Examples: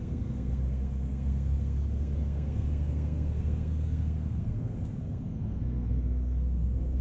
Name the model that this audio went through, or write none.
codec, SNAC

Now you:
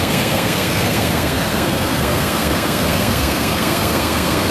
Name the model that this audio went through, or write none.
codec, SNAC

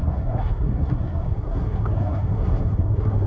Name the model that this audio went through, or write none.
codec, SNAC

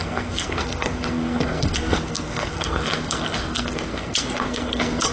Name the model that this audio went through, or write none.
codec, SNAC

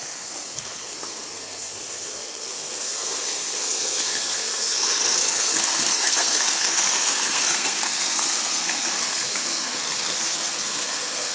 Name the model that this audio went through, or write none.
codec, SNAC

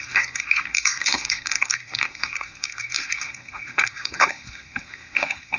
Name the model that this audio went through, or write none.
codec, SNAC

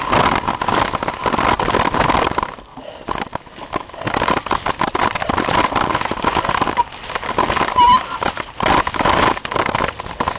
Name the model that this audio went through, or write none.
none